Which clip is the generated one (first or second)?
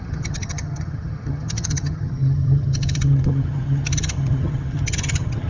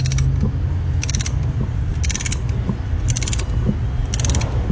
first